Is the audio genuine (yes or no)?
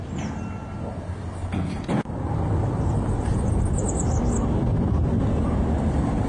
yes